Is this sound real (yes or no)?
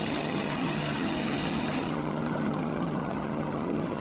no